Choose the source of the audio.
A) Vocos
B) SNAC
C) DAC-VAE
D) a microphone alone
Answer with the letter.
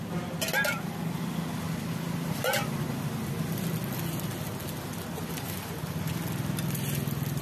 D